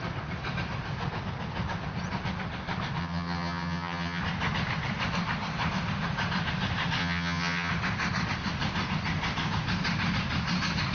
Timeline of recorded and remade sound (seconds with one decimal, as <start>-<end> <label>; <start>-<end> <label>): 0.0-3.0 recorded; 3.0-4.2 remade; 4.2-7.0 recorded; 7.0-7.7 remade; 7.7-10.9 recorded